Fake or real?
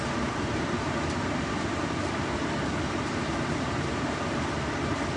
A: fake